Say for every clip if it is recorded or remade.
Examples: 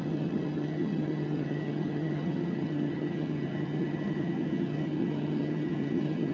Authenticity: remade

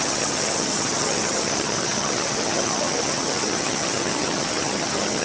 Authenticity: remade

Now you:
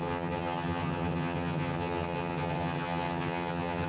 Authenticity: remade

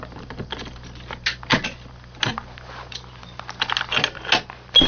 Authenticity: recorded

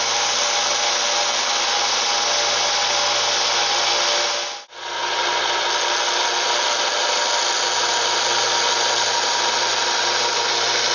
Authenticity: recorded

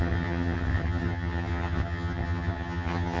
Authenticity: remade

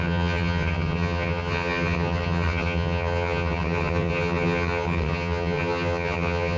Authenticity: remade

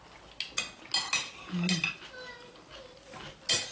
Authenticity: recorded